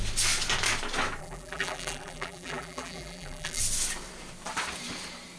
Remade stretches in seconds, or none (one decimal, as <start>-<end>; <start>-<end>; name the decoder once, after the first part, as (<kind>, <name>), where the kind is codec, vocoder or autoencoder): 1.2-3.6 (vocoder, BigVGAN v2)